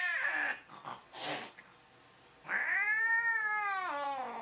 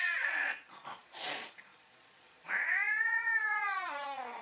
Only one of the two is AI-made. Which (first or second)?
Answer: second